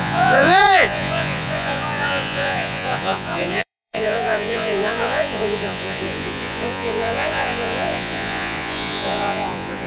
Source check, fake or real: fake